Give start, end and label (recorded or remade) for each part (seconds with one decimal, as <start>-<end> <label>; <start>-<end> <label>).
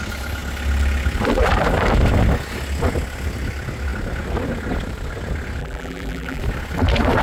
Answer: 0.0-5.6 recorded; 5.6-6.4 remade; 6.4-7.2 recorded